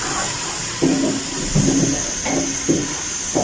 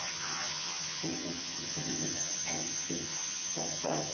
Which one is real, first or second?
first